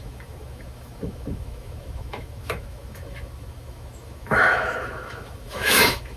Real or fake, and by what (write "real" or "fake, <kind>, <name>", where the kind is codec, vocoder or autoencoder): fake, autoencoder, DAC-VAE